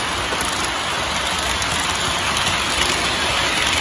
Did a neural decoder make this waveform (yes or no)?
no